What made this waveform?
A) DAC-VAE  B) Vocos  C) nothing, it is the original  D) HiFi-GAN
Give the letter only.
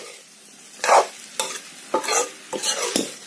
C